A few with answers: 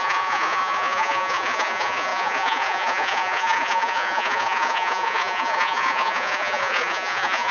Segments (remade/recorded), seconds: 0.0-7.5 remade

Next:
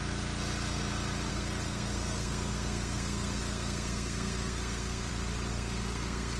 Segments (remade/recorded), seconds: 0.0-1.3 recorded; 1.3-5.1 remade; 5.1-5.5 recorded; 5.5-6.4 remade

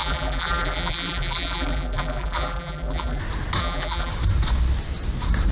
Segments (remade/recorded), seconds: 0.0-3.2 remade; 3.2-3.6 recorded; 3.6-4.1 remade; 4.1-5.5 recorded

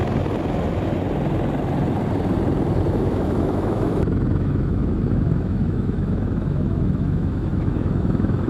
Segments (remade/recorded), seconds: 0.0-2.9 recorded; 2.9-8.5 remade

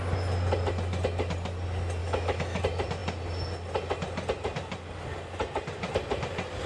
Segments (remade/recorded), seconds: 0.0-2.0 recorded; 2.0-2.6 remade; 2.6-6.7 recorded

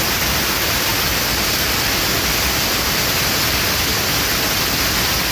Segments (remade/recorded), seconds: 0.0-5.3 recorded